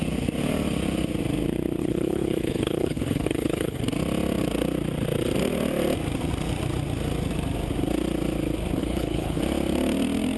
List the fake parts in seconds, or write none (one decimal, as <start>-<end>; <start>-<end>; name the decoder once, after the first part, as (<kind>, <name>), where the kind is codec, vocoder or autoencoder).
1.8-3.8 (codec, HILCodec); 8.8-9.4

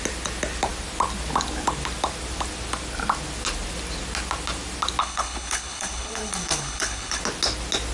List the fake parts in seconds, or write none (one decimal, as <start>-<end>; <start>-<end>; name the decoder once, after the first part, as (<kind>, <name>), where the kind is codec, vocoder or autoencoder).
5.0-7.2 (codec, HILCodec)

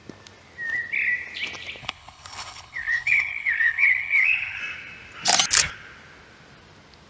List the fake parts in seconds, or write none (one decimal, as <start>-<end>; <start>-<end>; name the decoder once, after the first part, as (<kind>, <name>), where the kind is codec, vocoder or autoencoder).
1.8-4.6 (codec, HILCodec)

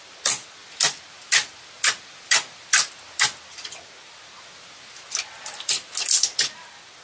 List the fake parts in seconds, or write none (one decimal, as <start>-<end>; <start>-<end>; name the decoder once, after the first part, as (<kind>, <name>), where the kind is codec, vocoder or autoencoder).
none

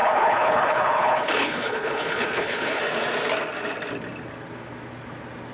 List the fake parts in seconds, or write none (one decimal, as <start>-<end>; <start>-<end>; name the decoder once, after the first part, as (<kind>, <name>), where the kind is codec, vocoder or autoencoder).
0.0-2.8 (codec, HILCodec)